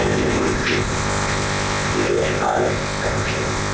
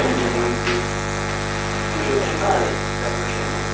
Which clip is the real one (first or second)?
second